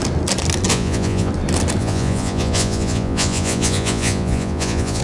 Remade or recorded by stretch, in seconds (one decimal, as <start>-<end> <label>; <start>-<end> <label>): 0.0-0.7 recorded; 0.7-1.3 remade; 1.3-1.8 recorded; 1.8-5.0 remade